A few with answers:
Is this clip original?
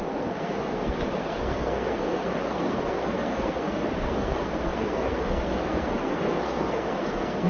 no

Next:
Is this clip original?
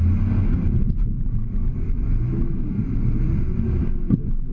yes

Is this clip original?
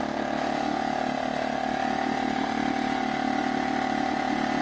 yes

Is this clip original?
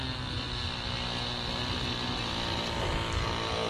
yes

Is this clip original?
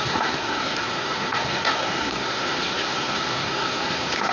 no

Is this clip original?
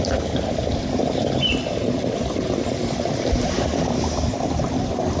yes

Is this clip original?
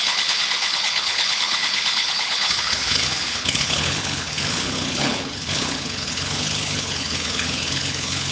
no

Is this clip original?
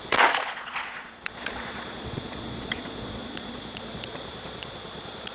no